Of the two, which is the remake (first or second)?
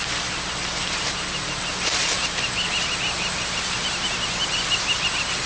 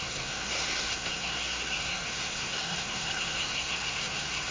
second